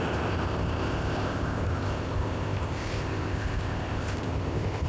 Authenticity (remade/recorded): remade